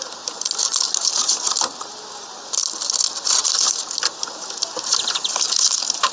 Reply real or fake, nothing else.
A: real